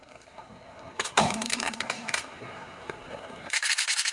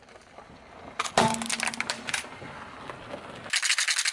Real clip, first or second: second